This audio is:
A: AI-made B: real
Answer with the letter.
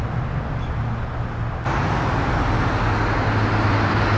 B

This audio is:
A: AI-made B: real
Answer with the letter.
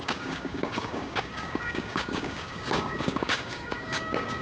A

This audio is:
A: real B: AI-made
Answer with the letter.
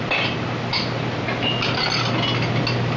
A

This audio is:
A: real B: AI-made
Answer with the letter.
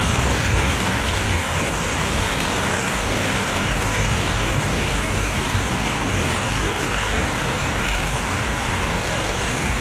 B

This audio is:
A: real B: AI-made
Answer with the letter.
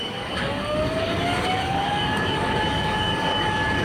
B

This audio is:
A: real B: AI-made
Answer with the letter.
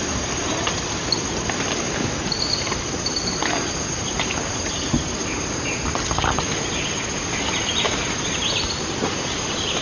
A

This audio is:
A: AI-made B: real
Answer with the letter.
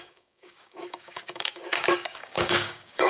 A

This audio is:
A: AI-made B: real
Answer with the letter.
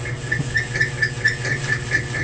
B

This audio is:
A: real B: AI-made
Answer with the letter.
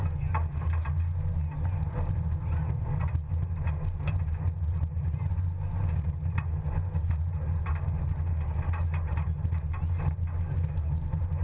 A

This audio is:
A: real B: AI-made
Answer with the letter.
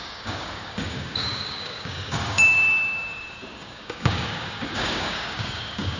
B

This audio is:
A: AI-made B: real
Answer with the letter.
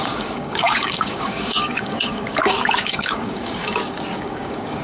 A